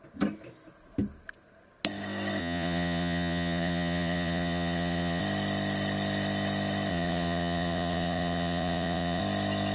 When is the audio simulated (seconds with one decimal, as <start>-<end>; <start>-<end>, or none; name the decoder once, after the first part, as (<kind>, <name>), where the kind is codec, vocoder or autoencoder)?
2.4-5.2 (vocoder, Vocos); 6.9-9.2